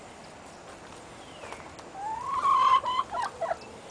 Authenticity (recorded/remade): recorded